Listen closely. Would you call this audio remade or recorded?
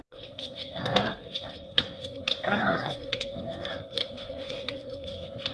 remade